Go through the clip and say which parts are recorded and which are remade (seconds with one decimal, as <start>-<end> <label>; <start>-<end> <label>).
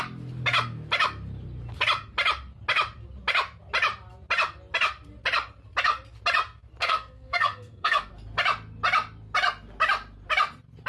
0.0-6.8 recorded; 6.8-8.1 remade; 8.1-10.9 recorded